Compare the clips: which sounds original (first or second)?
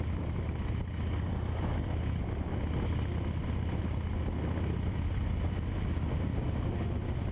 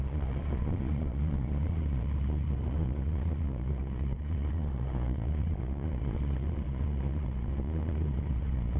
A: first